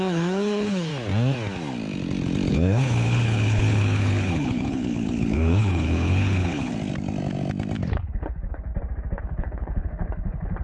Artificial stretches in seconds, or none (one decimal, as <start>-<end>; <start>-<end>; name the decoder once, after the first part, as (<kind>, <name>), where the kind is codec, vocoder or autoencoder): 0.0-0.9 (codec, HILCodec); 2.5-6.7; 7.9-8.7; 9.2-10.6